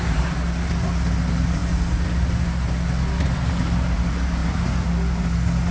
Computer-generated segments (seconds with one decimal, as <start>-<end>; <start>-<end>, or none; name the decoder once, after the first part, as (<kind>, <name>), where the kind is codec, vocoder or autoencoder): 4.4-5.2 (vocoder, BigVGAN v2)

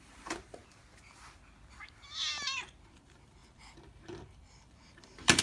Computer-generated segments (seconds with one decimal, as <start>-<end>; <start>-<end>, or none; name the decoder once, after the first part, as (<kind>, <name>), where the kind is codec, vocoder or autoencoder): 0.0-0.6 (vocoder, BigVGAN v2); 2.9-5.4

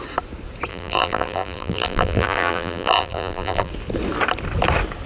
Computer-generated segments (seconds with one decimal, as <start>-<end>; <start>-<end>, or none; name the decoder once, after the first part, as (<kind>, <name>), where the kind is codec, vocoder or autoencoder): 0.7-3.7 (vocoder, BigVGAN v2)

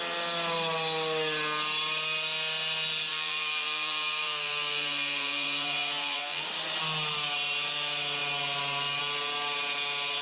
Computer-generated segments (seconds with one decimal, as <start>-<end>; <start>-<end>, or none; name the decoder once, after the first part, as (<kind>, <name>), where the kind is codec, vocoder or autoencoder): 3.1-6.4 (vocoder, BigVGAN v2)